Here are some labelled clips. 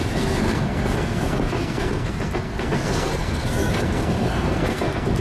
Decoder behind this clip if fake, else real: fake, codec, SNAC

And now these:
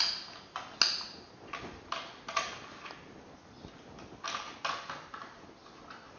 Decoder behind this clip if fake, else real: real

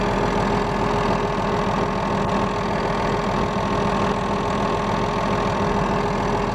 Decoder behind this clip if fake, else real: real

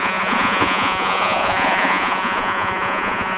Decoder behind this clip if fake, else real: fake, vocoder, Vocos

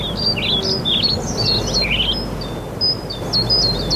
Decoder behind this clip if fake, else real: real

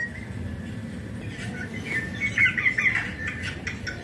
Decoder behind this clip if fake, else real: real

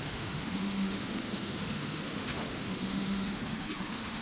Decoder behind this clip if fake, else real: fake, autoencoder, DAC-VAE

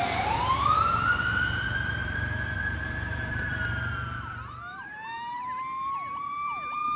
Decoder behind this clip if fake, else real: fake, vocoder, BigVGAN v2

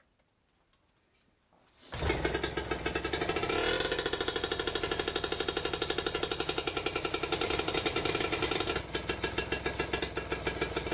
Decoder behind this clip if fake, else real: real